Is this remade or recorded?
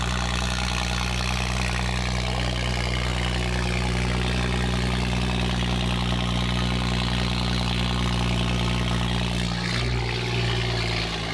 recorded